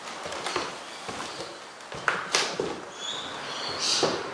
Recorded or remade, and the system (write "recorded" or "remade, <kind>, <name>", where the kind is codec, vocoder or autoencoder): recorded